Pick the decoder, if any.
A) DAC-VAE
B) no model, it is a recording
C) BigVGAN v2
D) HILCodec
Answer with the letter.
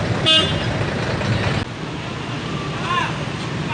B